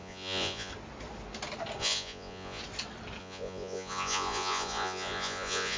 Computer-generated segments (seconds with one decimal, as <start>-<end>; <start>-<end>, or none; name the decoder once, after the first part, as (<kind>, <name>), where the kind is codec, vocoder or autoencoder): 0.0-0.7 (vocoder, Vocos); 1.8-2.6; 3.2-5.8

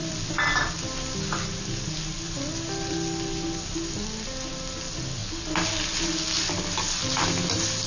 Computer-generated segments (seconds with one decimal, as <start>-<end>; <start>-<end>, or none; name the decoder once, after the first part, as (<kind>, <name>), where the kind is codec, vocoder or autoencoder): none

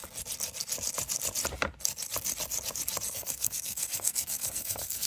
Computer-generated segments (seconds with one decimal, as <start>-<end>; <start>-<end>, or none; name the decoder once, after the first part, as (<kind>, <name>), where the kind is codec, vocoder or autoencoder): 3.1-5.1 (codec, SNAC)

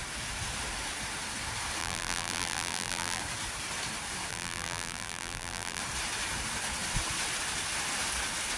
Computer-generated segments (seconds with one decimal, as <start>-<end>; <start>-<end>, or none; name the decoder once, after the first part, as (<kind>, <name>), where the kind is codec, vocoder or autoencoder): 1.8-3.2 (vocoder, BigVGAN v2); 4.3-5.8

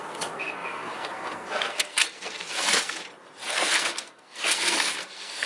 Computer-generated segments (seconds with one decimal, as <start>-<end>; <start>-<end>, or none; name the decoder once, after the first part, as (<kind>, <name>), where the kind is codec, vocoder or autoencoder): 0.0-3.0 (codec, SNAC); 3.5-5.5